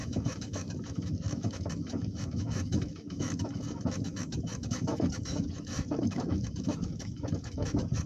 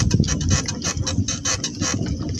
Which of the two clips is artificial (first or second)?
first